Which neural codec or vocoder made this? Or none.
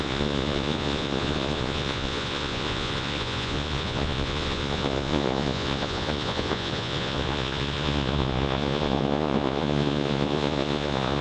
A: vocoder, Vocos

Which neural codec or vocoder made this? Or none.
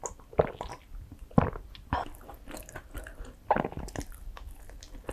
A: none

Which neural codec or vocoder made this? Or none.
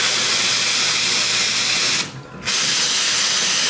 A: none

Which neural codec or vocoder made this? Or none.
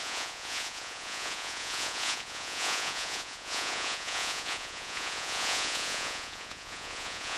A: vocoder, Vocos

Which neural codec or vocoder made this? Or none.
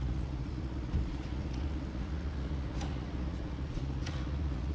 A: vocoder, Vocos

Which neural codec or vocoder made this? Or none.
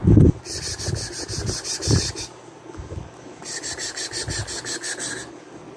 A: none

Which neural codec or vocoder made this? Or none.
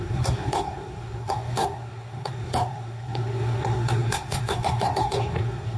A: codec, SNAC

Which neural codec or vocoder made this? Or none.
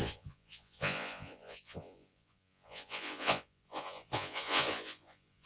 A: vocoder, Vocos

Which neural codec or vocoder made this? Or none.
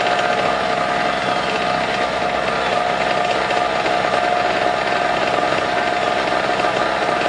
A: none